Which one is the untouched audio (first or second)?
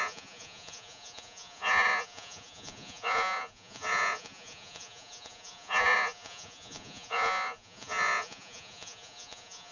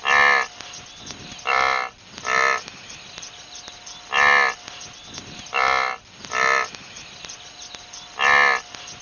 second